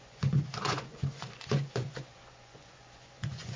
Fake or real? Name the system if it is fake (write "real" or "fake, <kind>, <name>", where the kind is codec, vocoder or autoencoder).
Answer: fake, vocoder, Vocos